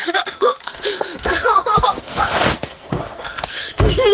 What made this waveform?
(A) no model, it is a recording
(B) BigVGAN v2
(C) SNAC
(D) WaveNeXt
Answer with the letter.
C